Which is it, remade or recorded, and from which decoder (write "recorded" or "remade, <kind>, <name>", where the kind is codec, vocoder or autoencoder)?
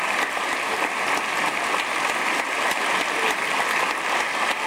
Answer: recorded